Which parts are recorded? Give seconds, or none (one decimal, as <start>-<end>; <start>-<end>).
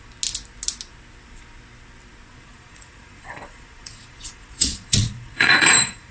0.0-2.3